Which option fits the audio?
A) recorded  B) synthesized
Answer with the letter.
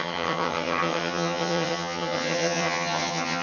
B